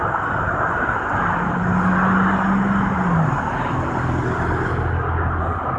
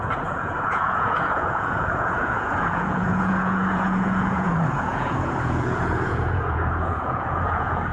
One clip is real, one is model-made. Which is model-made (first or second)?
second